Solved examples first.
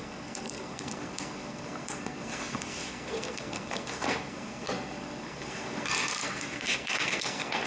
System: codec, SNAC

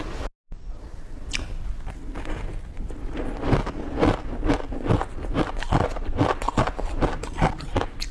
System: none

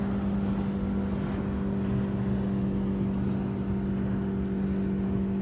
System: none